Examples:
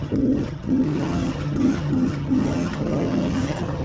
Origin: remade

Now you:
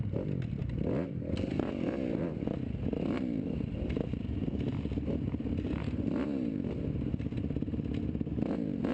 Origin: recorded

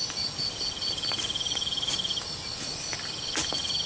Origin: recorded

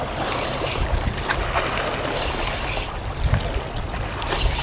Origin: recorded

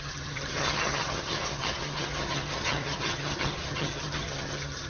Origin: remade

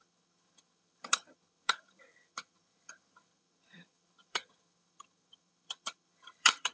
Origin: remade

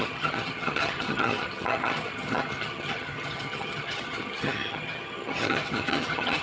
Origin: remade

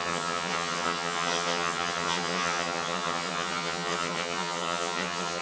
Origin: remade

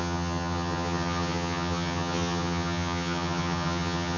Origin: remade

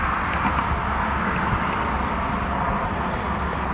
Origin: recorded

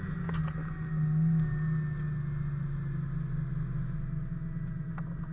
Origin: recorded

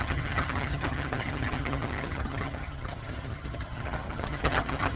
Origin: remade